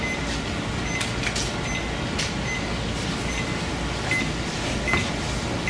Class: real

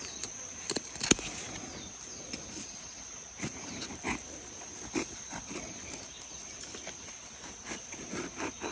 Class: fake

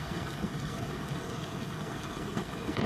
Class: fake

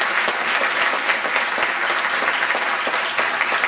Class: real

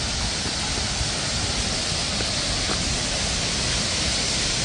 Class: real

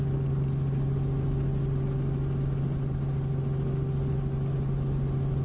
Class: real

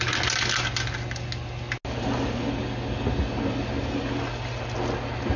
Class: real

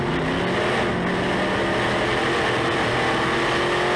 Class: real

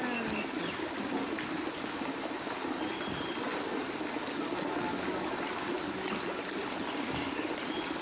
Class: real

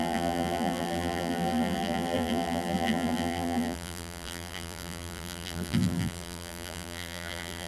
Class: fake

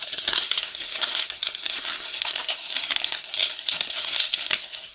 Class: fake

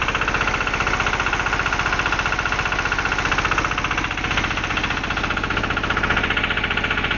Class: real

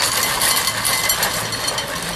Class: real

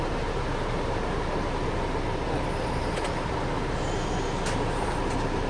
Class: fake